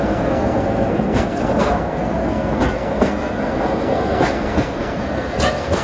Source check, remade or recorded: remade